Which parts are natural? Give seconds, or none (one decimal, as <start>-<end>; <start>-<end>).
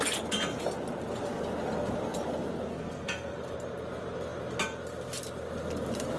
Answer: 0.0-2.7; 3.4-6.2